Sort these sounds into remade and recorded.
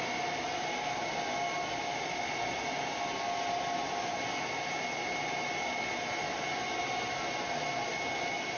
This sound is recorded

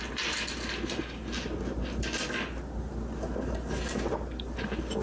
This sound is recorded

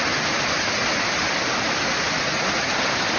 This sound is recorded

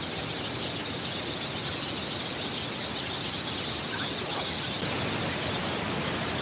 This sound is recorded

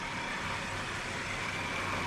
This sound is remade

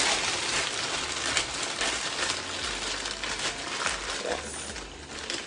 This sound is recorded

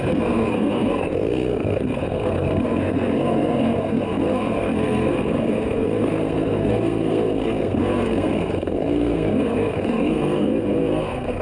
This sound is remade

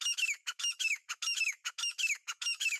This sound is remade